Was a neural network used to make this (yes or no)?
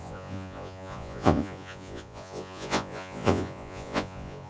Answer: yes